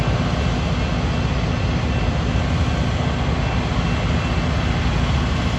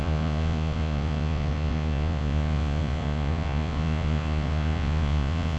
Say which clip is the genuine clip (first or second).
first